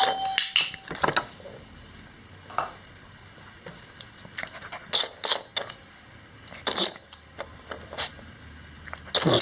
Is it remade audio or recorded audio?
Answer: recorded